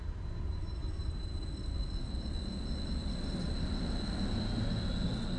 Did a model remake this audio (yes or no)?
no